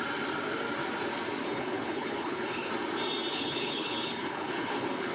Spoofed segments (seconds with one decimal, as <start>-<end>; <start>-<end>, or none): 1.4-2.7; 3.3-5.1